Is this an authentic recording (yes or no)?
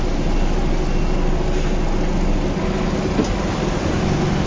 yes